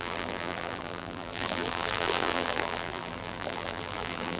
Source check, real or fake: fake